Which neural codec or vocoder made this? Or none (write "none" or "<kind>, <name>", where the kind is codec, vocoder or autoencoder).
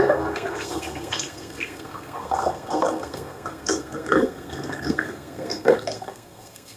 codec, SNAC